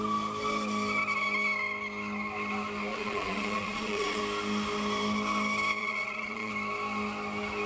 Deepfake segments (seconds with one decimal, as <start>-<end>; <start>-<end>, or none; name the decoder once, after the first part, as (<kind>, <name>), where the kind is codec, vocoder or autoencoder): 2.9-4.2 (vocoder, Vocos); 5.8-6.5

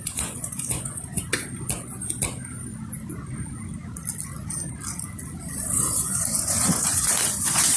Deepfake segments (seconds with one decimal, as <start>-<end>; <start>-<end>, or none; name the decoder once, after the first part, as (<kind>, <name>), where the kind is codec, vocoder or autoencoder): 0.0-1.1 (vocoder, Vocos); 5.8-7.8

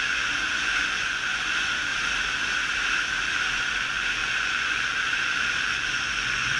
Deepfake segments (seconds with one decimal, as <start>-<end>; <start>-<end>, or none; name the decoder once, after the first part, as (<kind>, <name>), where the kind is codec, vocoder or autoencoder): 0.0-1.9 (vocoder, Vocos); 3.6-6.6

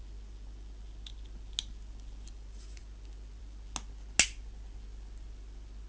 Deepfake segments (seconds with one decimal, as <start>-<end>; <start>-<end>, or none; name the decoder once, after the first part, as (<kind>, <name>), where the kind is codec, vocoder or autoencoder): none

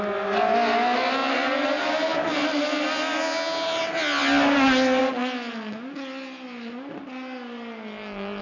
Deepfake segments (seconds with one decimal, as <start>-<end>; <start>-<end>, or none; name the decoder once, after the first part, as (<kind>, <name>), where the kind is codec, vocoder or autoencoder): none

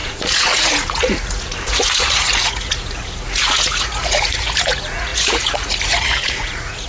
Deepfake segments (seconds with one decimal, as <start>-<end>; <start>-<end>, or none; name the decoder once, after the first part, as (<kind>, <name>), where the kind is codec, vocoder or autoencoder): 0.0-6.9 (vocoder, Vocos)

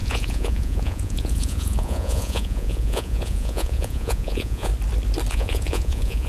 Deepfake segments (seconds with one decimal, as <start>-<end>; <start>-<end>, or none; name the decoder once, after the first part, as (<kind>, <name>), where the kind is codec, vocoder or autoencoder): 0.0-4.7 (vocoder, Vocos); 5.3-6.3